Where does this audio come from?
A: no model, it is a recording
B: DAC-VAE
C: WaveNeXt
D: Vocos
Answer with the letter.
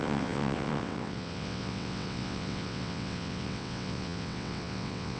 C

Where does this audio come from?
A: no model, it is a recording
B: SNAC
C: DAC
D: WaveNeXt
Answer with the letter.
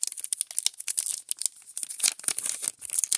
A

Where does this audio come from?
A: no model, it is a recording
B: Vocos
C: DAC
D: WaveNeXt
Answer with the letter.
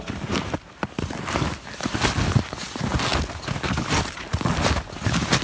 A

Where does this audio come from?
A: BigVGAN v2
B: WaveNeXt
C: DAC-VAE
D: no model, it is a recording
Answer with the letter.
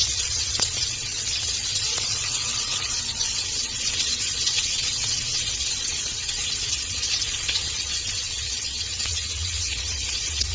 B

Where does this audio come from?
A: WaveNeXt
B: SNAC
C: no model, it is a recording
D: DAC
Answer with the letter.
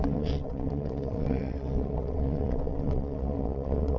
A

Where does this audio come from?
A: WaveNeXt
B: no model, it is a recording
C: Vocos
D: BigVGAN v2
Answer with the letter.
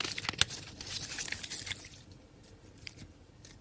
B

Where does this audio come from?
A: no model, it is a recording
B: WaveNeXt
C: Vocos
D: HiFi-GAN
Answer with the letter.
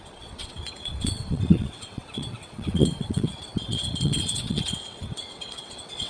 B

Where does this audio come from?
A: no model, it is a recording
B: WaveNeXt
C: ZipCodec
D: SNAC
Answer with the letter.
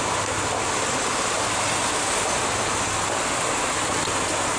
A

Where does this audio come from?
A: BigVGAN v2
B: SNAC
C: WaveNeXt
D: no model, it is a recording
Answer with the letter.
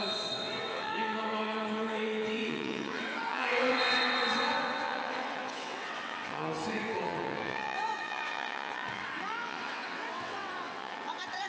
C